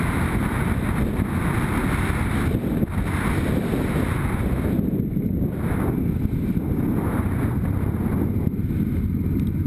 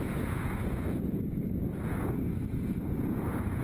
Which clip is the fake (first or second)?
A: second